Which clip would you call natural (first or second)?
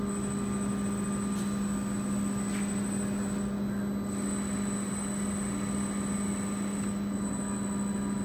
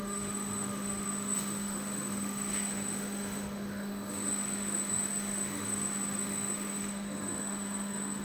first